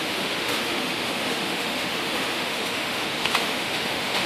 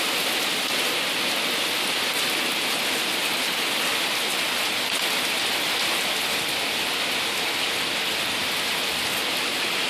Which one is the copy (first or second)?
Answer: first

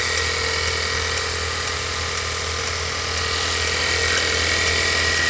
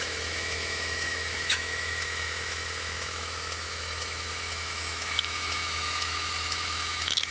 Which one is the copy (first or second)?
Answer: second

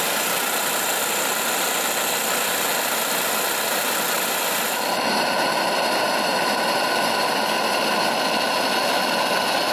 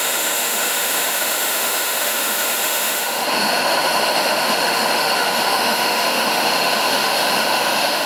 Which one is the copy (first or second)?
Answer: second